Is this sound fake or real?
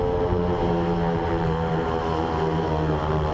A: fake